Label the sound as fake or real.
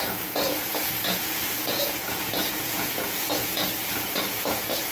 fake